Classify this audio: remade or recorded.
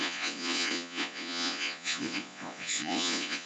remade